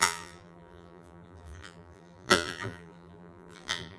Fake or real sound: fake